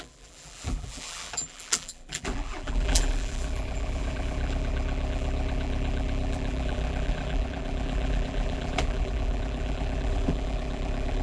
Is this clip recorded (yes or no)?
no